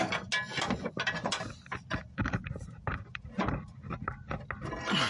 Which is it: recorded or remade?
recorded